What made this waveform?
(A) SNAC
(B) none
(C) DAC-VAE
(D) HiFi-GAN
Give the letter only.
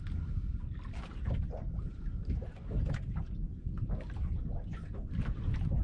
B